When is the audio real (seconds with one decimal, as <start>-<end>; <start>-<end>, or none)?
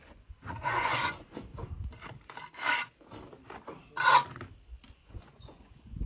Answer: 1.5-4.9